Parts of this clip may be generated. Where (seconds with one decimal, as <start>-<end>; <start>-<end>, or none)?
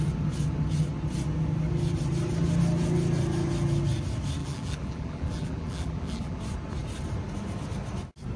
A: 4.4-6.4